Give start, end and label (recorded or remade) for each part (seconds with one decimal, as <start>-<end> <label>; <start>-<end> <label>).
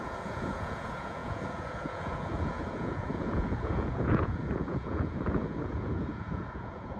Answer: 0.0-7.0 remade